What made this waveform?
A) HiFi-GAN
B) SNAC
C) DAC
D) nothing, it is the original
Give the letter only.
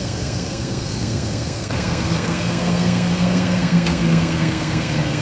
B